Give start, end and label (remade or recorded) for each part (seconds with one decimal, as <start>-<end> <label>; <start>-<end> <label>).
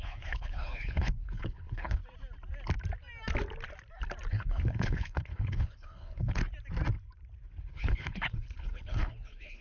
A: 0.0-2.0 remade; 2.0-4.3 recorded; 4.3-6.4 remade; 6.4-7.6 recorded; 7.6-9.6 remade